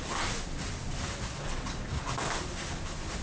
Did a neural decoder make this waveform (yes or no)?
no